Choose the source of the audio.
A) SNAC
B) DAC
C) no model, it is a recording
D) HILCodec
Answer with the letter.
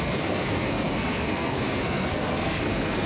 A